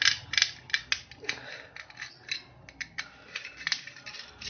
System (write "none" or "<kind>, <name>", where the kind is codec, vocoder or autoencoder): none